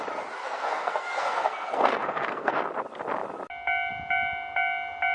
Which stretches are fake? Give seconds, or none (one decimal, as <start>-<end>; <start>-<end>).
0.4-2.7